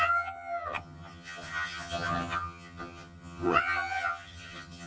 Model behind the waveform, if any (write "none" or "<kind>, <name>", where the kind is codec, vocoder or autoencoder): vocoder, HiFi-GAN